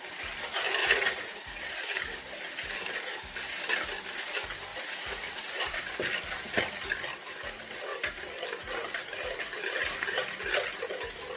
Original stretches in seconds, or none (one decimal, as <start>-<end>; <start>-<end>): 0.0-0.8; 1.6-4.7; 6.0-11.4